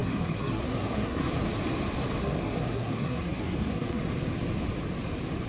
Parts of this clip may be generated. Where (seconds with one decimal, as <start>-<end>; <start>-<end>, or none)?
0.0-1.3; 2.2-4.0